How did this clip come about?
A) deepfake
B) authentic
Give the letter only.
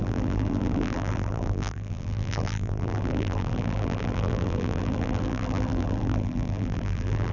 A